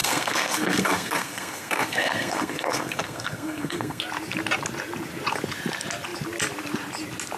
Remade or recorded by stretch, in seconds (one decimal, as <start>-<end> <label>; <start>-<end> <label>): 0.0-4.0 remade; 4.0-7.4 recorded